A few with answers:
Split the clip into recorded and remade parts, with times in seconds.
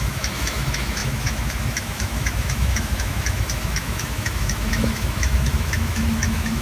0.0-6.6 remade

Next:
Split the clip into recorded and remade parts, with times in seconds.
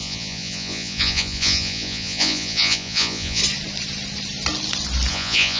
0.0-3.4 remade; 3.4-5.1 recorded; 5.1-5.6 remade